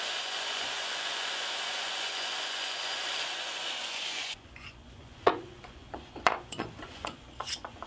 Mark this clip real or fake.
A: fake